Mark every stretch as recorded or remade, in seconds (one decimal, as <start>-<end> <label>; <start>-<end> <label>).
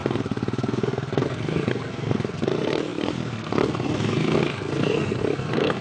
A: 0.0-5.8 remade